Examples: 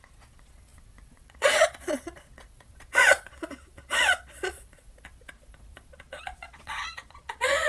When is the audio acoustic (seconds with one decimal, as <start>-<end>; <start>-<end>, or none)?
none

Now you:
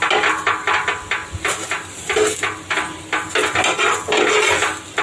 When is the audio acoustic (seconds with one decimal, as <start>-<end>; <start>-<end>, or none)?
0.0-5.0

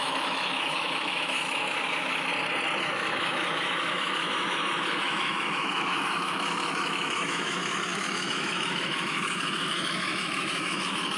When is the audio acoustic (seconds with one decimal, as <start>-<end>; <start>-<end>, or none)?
2.3-2.8